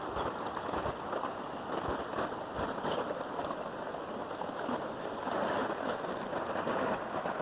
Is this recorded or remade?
recorded